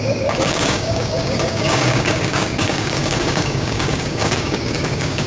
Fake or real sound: fake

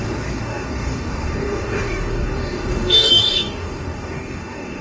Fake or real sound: fake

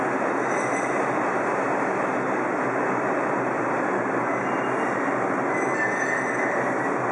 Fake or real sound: real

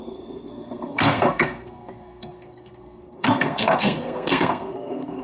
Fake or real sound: fake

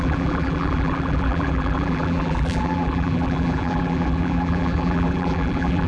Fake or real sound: fake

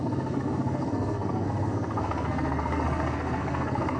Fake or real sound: fake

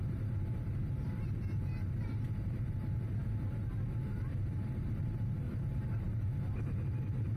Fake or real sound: fake